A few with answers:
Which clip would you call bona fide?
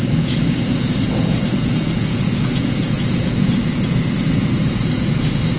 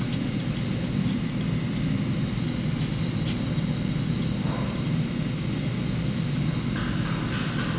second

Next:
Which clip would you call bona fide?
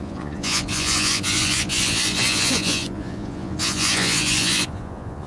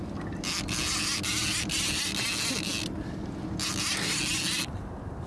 second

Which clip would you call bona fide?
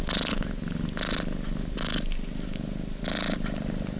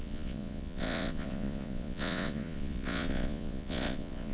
first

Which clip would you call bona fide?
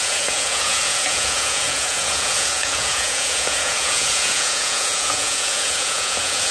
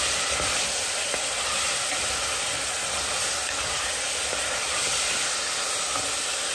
second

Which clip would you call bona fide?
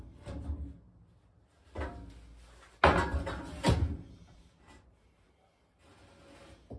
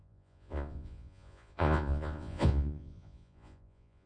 first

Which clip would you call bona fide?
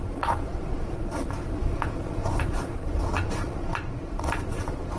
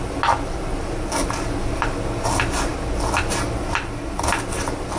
second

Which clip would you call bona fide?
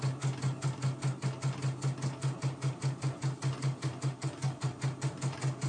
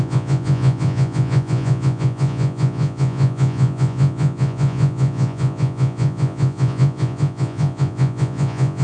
first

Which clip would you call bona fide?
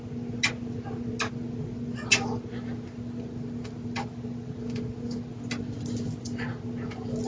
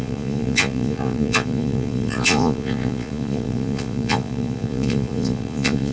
first